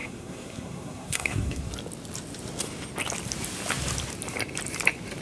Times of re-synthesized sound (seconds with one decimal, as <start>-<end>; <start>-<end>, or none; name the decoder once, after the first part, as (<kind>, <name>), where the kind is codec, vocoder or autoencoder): 0.0-1.7 (codec, SNAC)